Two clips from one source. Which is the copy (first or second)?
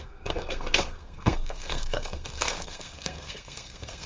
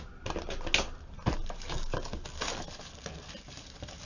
first